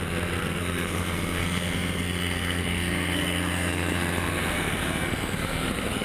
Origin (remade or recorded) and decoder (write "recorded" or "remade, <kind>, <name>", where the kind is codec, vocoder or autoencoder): remade, codec, SNAC